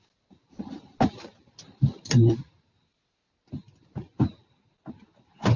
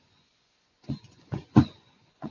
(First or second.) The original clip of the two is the first